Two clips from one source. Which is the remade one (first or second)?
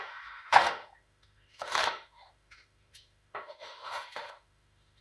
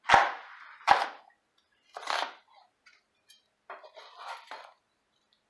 first